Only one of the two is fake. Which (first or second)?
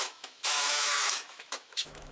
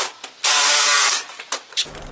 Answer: first